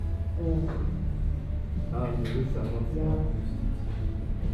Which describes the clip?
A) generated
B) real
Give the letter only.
B